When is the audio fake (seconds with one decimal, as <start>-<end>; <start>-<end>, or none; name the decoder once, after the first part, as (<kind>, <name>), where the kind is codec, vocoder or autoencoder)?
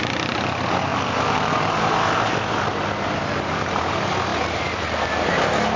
none